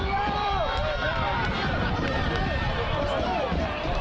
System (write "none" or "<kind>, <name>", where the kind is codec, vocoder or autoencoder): vocoder, BigVGAN v2